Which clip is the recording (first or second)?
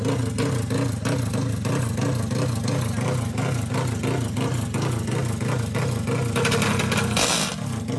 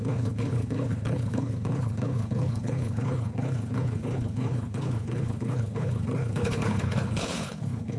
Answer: first